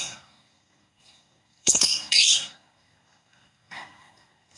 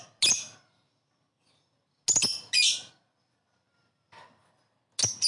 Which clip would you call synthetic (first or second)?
first